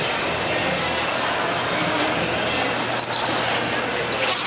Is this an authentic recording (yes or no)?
yes